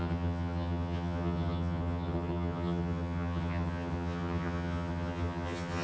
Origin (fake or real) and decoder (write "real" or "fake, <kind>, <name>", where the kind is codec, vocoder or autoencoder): fake, vocoder, HiFi-GAN